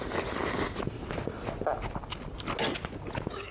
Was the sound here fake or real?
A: real